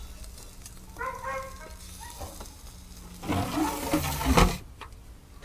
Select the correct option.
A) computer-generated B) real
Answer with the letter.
B